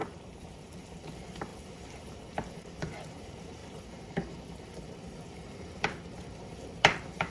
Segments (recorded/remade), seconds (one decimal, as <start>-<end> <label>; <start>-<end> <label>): 0.0-7.3 remade